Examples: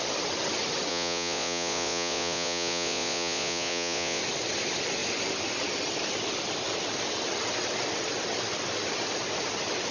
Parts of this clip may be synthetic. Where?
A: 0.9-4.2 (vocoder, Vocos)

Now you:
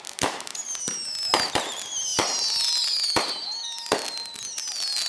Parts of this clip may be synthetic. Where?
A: none

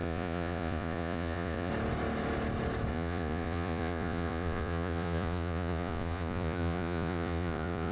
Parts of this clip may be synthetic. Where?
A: 0.0-1.7 (vocoder, Vocos); 2.9-7.9

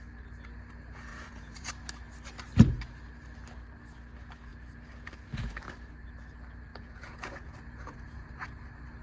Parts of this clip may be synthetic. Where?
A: 1.1-1.7 (vocoder, Vocos); 6.7-8.3

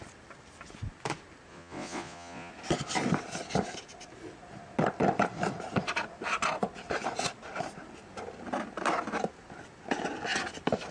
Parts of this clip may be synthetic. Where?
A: 1.5-2.5 (vocoder, Vocos)

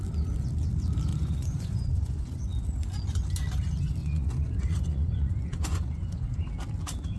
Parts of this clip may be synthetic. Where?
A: 1.1-2.4 (vocoder, Vocos); 4.0-6.4

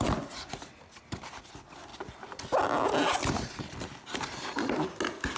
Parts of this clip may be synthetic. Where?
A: none